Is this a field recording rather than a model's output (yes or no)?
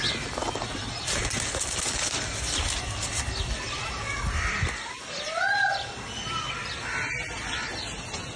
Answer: yes